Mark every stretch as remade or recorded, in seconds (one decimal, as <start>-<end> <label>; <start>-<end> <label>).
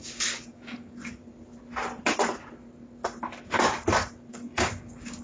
0.0-1.2 remade; 1.2-4.3 recorded; 4.3-5.2 remade